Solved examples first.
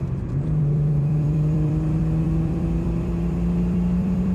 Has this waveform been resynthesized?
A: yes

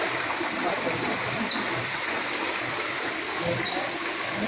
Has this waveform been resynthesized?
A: no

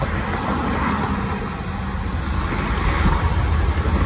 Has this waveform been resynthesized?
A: no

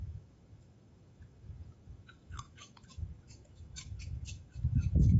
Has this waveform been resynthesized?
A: yes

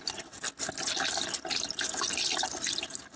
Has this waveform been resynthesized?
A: no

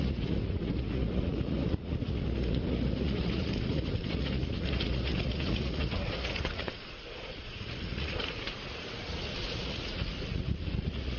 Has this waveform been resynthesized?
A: yes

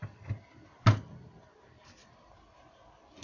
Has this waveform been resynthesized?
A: no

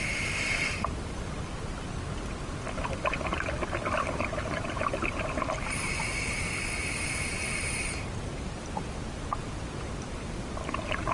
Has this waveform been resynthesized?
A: yes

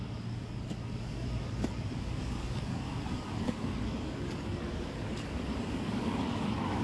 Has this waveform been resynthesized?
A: yes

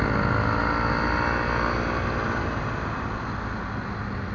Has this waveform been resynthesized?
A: no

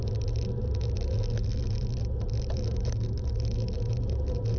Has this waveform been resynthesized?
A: no